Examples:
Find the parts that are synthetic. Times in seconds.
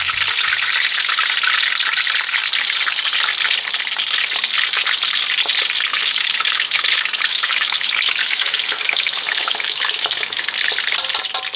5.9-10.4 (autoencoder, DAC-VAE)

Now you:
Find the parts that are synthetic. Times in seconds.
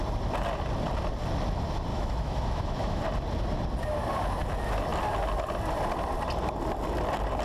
1.9-3.0 (autoencoder, DAC-VAE)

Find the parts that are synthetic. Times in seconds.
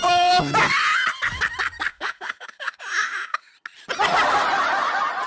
1.9-3.5 (autoencoder, DAC-VAE)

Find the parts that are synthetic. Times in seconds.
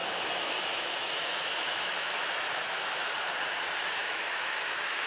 0.0-3.1 (autoencoder, DAC-VAE); 4.0-5.1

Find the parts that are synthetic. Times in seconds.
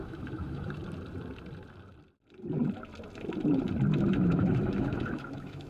0.0-0.8 (autoencoder, DAC-VAE); 4.1-5.7